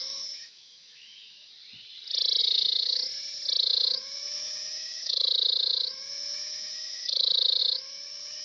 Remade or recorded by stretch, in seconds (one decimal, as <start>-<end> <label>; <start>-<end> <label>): 0.0-1.5 remade; 1.5-2.4 recorded; 2.4-3.0 remade; 3.0-3.6 recorded; 3.6-8.4 remade